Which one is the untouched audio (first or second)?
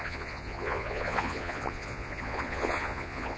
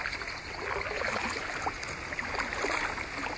second